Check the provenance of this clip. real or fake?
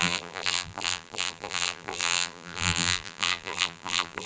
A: fake